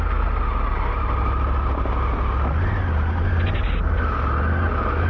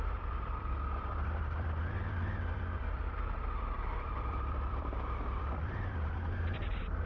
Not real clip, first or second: second